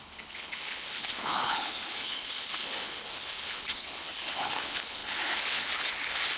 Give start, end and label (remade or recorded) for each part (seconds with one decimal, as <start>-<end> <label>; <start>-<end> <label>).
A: 0.0-6.4 remade